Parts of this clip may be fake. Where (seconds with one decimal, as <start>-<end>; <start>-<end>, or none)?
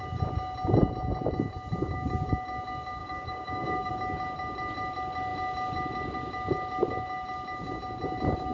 3.0-3.9